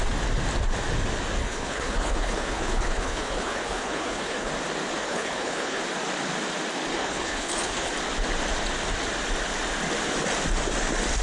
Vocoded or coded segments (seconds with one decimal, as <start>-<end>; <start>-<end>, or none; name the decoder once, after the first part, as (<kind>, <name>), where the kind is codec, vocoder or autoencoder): 1.4-4.5 (codec, HILCodec); 5.0-5.8; 6.9-7.9